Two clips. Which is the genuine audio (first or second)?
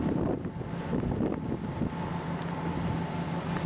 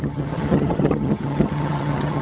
first